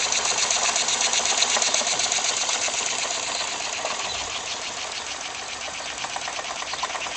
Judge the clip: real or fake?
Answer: real